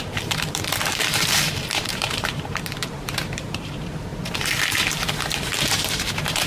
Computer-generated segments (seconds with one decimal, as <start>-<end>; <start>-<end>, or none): 0.0-4.1; 5.6-6.5